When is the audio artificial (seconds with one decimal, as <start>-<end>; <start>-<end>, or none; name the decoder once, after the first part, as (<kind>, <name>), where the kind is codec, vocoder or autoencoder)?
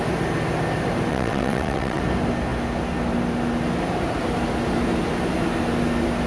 1.1-2.0 (vocoder, WaveNeXt)